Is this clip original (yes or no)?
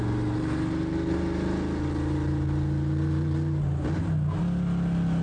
yes